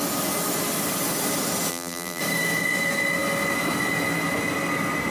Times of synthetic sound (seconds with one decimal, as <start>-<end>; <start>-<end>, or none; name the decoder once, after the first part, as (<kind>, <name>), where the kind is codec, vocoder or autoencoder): 1.7-2.2 (vocoder, BigVGAN v2)